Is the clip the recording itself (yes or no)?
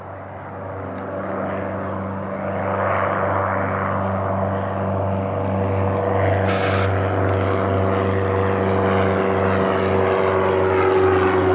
yes